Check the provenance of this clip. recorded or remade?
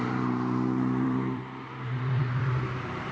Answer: remade